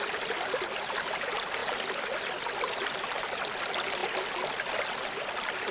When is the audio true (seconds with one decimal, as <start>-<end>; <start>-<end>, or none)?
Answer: 0.0-1.6; 3.2-5.7